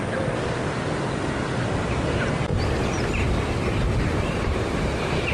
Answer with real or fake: real